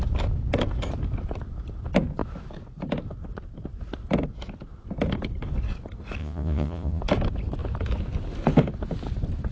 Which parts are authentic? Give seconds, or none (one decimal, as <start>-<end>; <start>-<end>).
0.0-6.2; 7.0-9.5